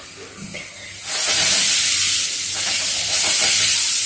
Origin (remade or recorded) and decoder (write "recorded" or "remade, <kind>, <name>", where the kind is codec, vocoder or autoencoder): recorded